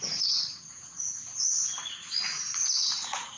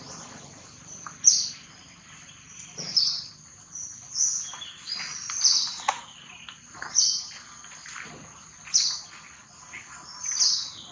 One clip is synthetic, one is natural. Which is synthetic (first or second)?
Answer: first